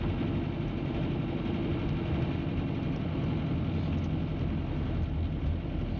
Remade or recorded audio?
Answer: recorded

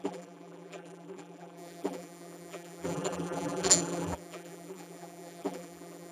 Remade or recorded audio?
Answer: remade